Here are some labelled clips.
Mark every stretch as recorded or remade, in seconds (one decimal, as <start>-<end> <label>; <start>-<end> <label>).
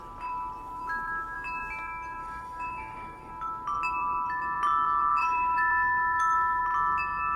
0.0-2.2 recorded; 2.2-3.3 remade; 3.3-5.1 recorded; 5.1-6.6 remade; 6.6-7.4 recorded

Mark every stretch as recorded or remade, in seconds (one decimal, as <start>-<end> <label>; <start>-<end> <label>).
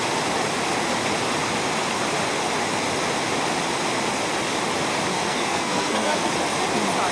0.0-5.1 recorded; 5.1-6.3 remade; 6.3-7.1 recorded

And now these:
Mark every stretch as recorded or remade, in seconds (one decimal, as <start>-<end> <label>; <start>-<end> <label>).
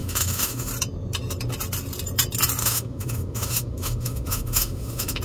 0.0-0.7 remade; 0.7-2.6 recorded; 2.6-5.2 remade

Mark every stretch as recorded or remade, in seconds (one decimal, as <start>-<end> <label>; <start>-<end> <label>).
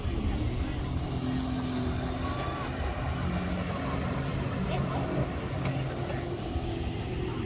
0.0-7.5 recorded